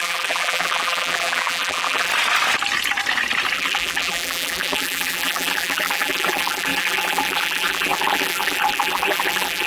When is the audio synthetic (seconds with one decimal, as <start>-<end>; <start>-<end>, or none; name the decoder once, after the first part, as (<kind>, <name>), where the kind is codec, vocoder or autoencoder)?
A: 0.0-2.1 (vocoder, BigVGAN v2); 3.5-9.7